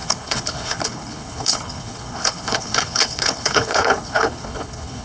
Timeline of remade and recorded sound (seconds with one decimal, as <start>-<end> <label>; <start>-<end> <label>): 0.0-5.0 remade

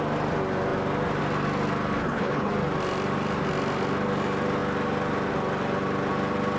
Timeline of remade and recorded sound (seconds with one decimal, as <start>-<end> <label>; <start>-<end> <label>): 0.0-2.0 recorded; 2.0-2.5 remade; 2.5-6.6 recorded

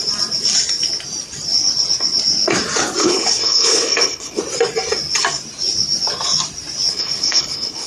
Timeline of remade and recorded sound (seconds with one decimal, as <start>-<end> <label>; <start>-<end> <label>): 0.0-3.0 recorded; 3.0-4.4 remade; 4.4-6.9 recorded; 6.9-7.9 remade

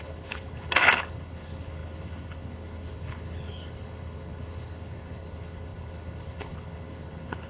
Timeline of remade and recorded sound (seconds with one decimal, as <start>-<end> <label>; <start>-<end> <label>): 0.0-7.5 remade

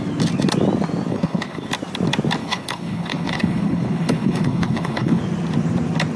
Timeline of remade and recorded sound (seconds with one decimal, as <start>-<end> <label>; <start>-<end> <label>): 0.0-1.1 recorded; 1.1-1.7 remade; 1.7-2.4 recorded; 2.4-5.2 remade; 5.2-6.2 recorded